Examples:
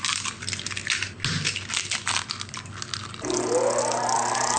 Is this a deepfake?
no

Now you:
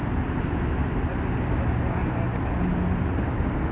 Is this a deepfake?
no